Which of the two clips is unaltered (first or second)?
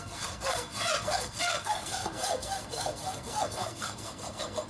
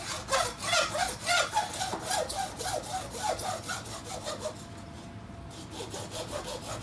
second